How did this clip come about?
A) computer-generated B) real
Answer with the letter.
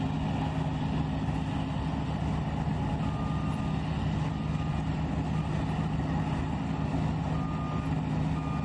B